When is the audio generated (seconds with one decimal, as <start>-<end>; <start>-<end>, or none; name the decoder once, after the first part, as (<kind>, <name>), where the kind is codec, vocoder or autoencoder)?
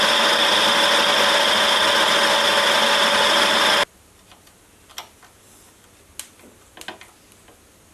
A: none